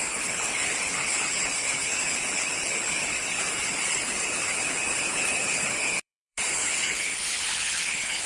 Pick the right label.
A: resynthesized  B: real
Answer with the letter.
A